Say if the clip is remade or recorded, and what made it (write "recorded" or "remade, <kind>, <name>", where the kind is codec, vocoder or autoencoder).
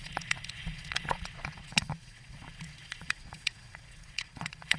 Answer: remade, vocoder, Vocos